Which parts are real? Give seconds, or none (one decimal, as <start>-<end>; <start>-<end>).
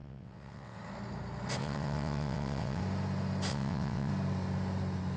0.8-1.6; 2.8-3.5; 4.1-5.2